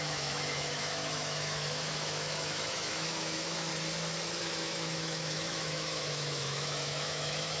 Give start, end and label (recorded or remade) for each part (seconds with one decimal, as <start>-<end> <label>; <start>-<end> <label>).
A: 0.0-3.7 remade; 3.7-4.4 recorded; 4.4-7.6 remade